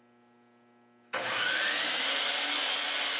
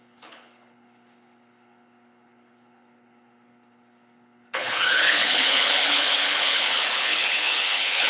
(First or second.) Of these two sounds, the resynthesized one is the second